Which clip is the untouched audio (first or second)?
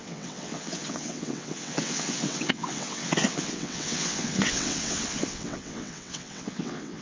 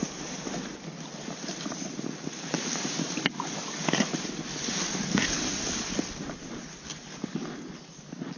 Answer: second